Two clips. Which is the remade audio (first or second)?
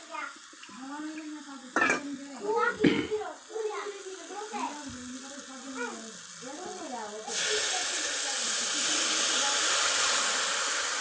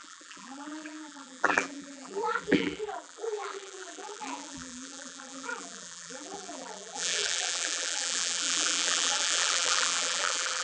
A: second